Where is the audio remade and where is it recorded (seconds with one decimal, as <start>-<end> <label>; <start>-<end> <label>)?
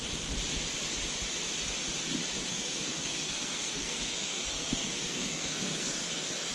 0.0-2.5 recorded; 2.5-6.5 remade